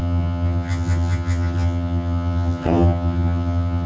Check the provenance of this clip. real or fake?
fake